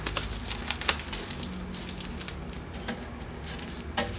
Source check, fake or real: real